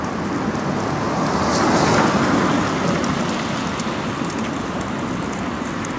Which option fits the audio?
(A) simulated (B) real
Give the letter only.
B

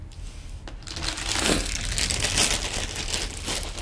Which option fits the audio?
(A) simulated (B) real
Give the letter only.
B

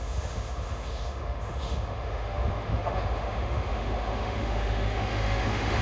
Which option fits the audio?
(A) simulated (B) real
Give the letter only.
A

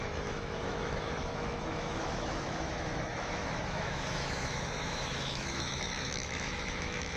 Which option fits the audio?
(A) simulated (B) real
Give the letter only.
A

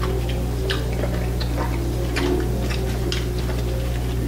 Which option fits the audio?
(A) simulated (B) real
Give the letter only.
B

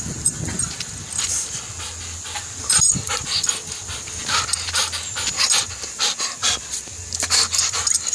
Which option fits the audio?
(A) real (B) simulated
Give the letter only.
A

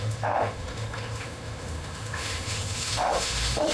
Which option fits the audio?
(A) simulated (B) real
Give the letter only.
A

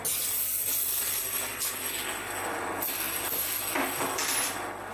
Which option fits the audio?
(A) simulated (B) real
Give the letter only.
B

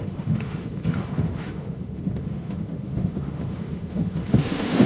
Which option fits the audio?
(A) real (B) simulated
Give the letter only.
B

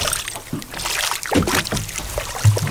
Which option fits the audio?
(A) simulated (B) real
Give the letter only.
B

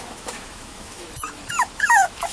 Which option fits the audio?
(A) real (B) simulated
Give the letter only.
B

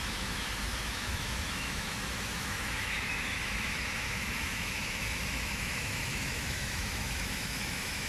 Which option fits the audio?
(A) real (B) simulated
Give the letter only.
B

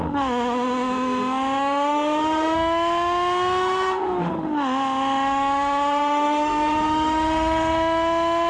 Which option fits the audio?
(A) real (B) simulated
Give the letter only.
B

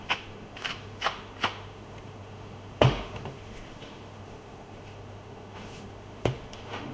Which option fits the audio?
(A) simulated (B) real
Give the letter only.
A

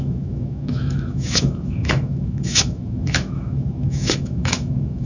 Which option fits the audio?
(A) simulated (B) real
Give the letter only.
A